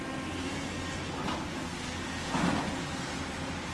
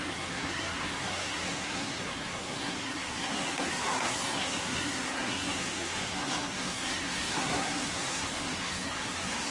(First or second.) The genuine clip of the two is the first